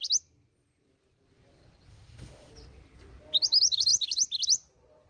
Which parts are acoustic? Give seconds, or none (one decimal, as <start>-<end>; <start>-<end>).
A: 0.0-1.9; 2.5-5.1